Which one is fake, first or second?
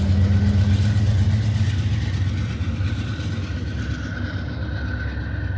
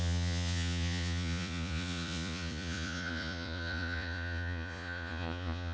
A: second